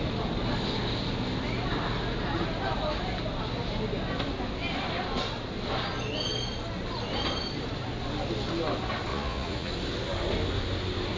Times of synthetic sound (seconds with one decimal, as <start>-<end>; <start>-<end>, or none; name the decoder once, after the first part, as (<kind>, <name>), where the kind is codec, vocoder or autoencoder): 9.1-9.7 (vocoder, Vocos)

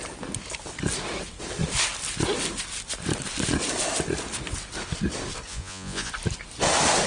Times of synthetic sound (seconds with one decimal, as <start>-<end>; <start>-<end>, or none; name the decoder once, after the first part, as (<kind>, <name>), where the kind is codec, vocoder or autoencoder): 5.5-6.1 (vocoder, Vocos)

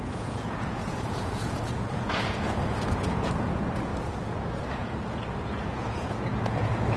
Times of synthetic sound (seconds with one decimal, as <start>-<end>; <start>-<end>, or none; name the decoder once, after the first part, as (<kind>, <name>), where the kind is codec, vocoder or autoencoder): 0.0-3.9 (vocoder, Vocos); 4.7-7.0

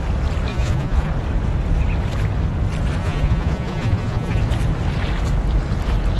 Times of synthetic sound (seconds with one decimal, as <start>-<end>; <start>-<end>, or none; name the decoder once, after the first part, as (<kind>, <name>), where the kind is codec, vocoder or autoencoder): 0.5-1.1 (vocoder, Vocos); 3.0-4.4

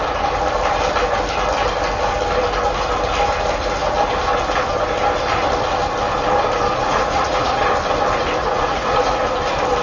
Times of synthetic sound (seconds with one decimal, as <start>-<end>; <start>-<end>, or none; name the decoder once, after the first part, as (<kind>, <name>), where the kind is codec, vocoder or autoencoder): 6.7-7.6 (vocoder, Vocos); 8.4-9.2

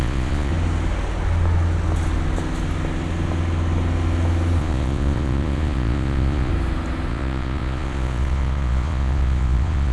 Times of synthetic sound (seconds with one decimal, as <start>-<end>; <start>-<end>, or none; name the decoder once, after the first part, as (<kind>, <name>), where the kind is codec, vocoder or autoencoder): 0.0-0.5 (vocoder, Vocos); 4.6-6.5; 7.1-9.9